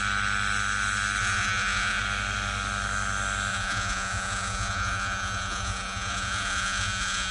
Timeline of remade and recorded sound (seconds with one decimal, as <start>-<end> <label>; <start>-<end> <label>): 0.0-1.2 recorded; 1.2-2.0 remade; 2.0-3.5 recorded; 3.5-7.3 remade